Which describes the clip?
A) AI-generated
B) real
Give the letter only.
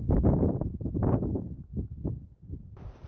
B